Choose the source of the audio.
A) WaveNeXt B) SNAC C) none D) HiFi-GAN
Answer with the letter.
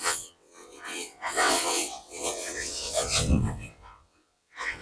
A